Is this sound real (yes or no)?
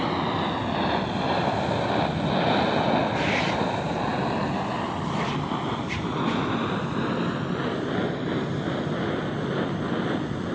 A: yes